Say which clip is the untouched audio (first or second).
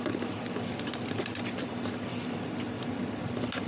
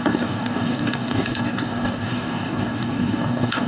first